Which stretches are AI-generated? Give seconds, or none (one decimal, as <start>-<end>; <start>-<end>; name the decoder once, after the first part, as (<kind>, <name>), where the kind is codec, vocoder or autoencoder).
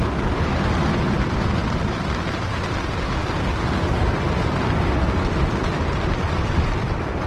none